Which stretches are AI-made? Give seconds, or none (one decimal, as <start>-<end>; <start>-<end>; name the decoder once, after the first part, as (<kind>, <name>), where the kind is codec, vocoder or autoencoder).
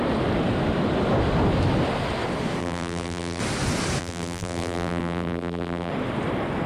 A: 2.6-3.4 (vocoder, BigVGAN v2); 4.0-5.9